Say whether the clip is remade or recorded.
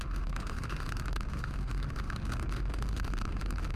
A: remade